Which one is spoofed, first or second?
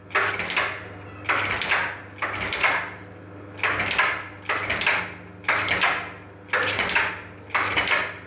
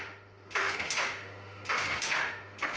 second